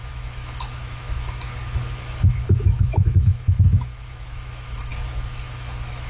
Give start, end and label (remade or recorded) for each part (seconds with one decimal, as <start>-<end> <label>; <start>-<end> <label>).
0.0-1.5 remade; 1.5-2.3 recorded; 2.3-4.9 remade; 4.9-5.5 recorded; 5.5-6.1 remade